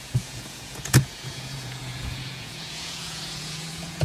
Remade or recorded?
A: remade